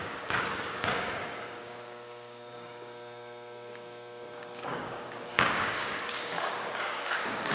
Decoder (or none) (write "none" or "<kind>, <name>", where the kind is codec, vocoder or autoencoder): codec, DAC